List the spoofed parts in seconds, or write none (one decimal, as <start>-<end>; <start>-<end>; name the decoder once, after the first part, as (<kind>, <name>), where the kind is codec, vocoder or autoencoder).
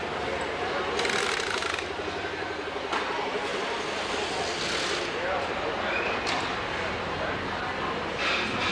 none